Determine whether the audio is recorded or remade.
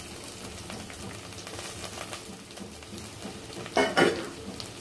recorded